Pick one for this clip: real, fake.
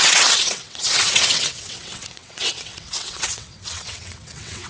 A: fake